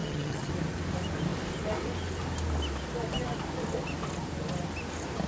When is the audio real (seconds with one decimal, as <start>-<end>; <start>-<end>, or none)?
0.5-5.3